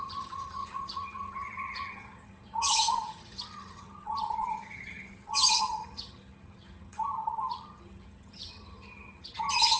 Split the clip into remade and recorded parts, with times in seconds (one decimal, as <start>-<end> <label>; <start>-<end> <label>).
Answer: 0.0-9.8 remade